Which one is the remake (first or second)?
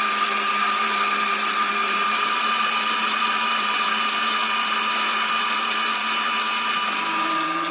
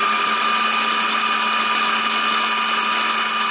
first